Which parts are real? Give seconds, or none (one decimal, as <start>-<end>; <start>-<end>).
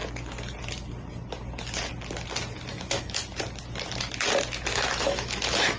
0.0-2.7; 3.2-4.7